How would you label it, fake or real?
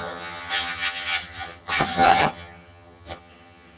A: fake